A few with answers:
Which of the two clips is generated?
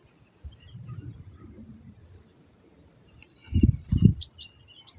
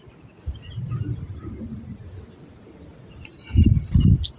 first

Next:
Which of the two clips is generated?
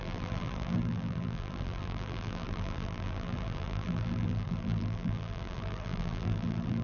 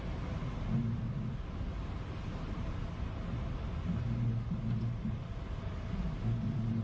first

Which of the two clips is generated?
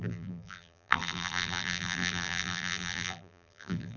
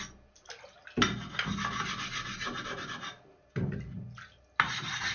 first